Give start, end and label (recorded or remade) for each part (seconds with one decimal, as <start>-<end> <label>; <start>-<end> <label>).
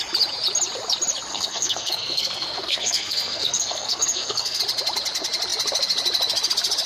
0.0-1.3 recorded; 1.3-4.6 remade; 4.6-6.9 recorded